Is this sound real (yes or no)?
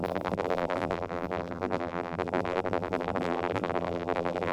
no